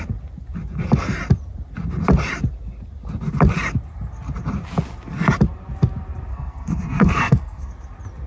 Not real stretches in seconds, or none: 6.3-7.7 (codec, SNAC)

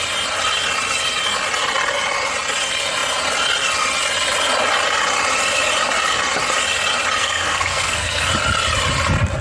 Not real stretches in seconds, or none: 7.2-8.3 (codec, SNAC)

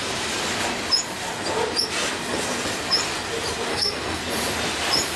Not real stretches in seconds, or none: 3.7-4.2 (codec, SNAC)

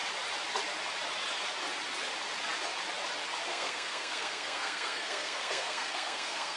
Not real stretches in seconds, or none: 3.5-6.6 (codec, SNAC)

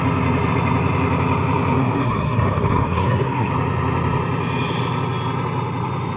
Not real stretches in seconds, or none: 1.8-3.5 (codec, SNAC)

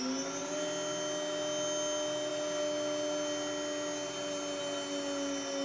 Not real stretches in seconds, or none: none